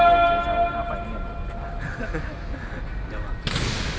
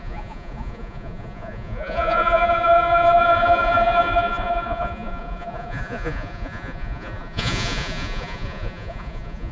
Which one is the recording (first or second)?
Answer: first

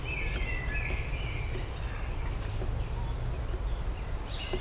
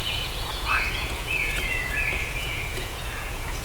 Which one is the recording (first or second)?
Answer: first